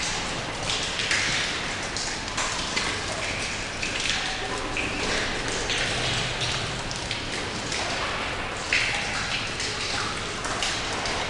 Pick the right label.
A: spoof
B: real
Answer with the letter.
B